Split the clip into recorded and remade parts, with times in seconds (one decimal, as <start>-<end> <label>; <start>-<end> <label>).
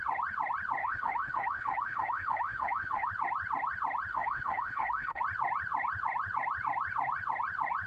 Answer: 0.0-0.8 recorded; 0.8-3.1 remade; 3.1-4.1 recorded; 4.1-5.2 remade; 5.2-7.9 recorded